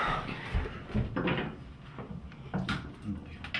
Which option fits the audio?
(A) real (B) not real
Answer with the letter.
A